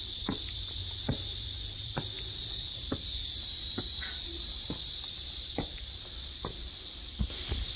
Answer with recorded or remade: remade